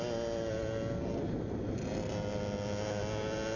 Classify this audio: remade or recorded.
recorded